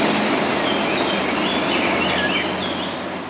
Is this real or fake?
real